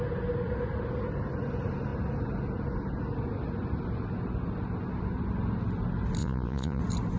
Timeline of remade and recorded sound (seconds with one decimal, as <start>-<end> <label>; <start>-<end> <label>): 0.0-6.2 recorded; 6.2-6.8 remade; 6.8-7.2 recorded